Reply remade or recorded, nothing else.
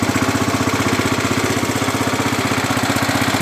recorded